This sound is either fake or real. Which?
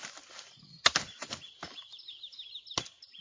real